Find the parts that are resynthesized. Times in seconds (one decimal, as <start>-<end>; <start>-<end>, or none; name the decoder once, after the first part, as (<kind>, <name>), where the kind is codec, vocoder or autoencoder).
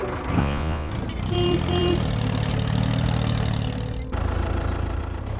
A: 0.4-0.9 (vocoder, Vocos)